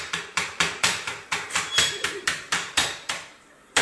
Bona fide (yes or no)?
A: no